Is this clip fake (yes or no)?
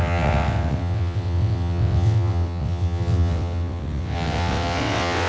yes